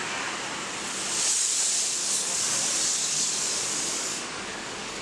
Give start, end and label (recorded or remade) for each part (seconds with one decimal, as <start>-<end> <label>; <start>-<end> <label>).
0.0-2.0 recorded; 2.0-2.6 remade; 2.6-3.0 recorded; 3.0-5.0 remade